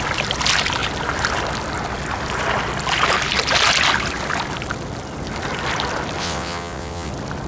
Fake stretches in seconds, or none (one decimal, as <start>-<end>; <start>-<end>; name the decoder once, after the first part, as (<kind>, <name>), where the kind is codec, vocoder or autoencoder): 6.2-7.1 (vocoder, WaveNeXt)